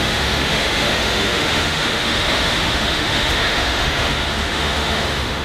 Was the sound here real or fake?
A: fake